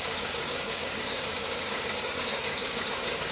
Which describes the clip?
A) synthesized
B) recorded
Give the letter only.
A